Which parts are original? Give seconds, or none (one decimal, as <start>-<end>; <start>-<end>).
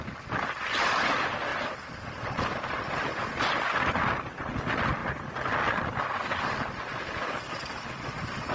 0.0-5.0; 6.0-8.5